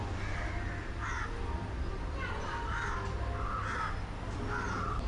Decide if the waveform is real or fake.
real